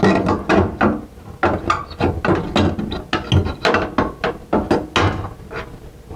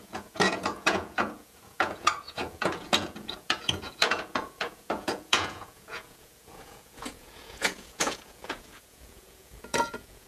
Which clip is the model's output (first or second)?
second